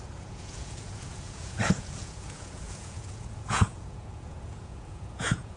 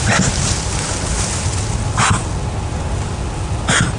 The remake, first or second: first